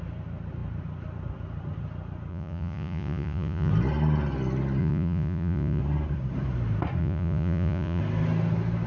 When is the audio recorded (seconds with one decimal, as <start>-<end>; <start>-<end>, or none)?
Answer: 0.0-2.3; 3.7-4.8; 5.8-7.0; 8.0-8.9